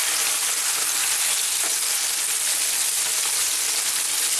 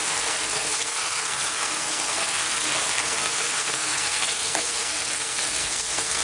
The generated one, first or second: second